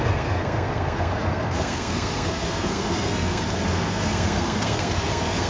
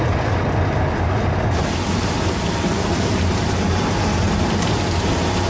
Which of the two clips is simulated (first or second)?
first